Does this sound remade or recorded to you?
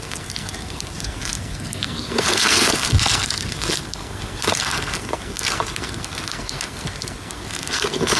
remade